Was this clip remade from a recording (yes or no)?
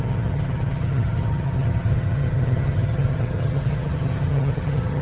yes